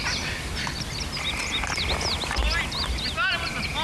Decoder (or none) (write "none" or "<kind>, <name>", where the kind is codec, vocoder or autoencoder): none